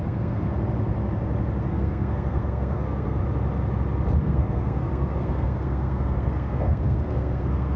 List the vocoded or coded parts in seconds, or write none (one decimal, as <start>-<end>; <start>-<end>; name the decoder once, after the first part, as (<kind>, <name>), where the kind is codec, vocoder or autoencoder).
0.0-0.5 (codec, SNAC); 1.6-3.2; 4.2-7.8